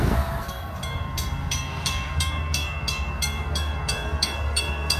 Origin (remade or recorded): remade